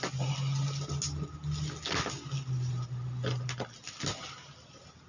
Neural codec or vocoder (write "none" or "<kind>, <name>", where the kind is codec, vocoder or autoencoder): none